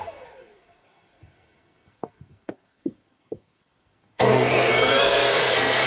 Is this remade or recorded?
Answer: remade